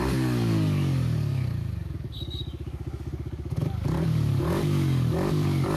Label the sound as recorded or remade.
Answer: remade